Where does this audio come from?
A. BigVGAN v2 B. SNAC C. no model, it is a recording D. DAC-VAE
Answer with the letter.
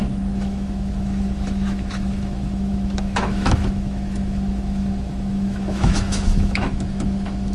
D